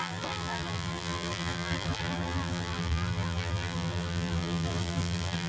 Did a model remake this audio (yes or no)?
yes